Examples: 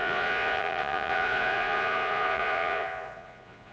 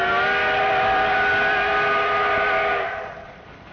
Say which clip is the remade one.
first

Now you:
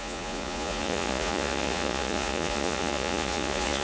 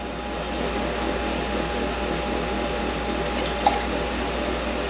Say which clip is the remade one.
first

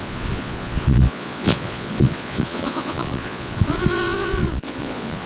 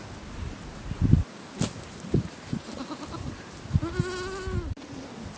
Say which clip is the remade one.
first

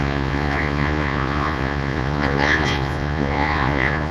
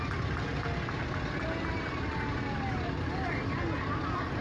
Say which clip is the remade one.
first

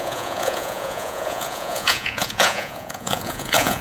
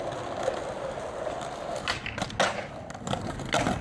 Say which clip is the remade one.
first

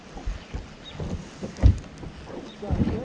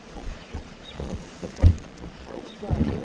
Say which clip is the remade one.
second